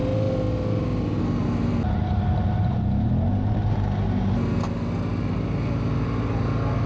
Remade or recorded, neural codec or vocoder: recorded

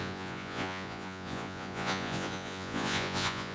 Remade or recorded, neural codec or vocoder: remade, vocoder, Vocos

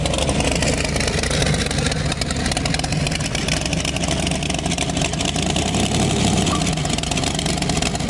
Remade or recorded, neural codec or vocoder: recorded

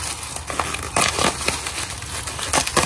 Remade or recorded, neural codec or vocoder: recorded